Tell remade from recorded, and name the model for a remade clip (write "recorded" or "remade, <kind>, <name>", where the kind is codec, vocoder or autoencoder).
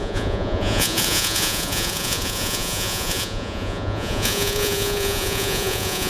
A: remade, vocoder, Vocos